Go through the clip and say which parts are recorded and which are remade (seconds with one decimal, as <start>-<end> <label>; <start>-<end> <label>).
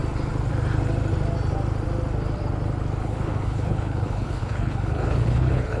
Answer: 0.0-3.0 recorded; 3.0-5.8 remade